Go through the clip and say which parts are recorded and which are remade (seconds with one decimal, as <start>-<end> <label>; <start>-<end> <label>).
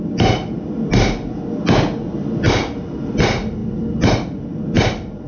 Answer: 0.0-5.3 recorded